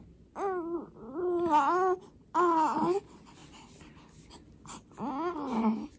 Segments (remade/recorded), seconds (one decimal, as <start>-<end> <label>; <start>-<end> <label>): 0.0-6.0 recorded